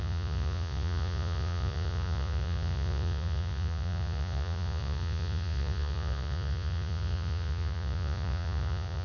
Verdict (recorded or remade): remade